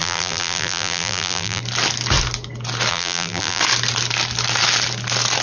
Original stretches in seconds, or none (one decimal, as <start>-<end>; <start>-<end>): 1.6-2.9; 3.6-5.4